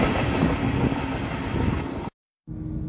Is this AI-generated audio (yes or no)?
no